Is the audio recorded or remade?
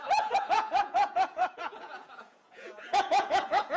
remade